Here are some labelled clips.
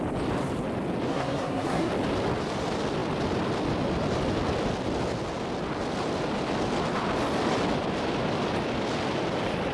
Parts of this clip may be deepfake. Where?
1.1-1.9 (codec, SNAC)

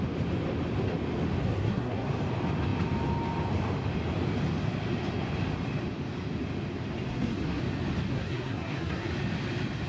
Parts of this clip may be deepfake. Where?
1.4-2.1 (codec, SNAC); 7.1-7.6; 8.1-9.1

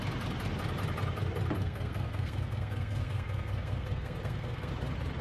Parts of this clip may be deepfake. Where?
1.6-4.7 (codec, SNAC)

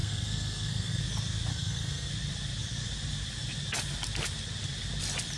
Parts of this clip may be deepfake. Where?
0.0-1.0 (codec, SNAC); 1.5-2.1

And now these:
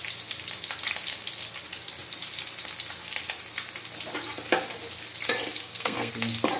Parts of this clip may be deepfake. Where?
5.6-6.1 (codec, SNAC)

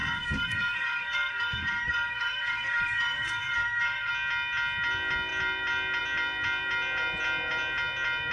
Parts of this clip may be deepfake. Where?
0.0-4.1 (codec, SNAC)

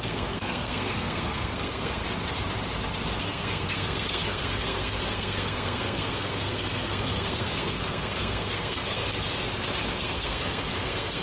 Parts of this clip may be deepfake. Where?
0.0-2.0 (codec, SNAC); 3.2-9.0; 9.9-11.2